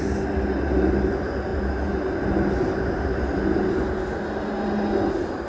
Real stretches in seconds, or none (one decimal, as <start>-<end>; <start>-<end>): 0.0-5.5